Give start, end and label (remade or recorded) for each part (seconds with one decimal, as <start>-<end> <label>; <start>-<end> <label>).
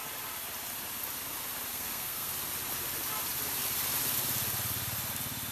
0.0-1.7 recorded; 1.7-2.3 remade; 2.3-5.5 recorded